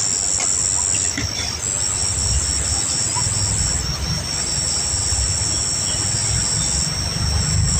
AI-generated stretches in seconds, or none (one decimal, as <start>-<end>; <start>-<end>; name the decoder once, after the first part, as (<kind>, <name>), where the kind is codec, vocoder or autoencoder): none